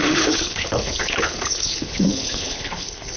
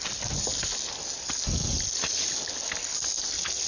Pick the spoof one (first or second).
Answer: first